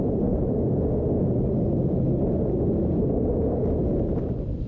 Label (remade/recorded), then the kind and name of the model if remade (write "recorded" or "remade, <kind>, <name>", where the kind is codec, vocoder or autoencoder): recorded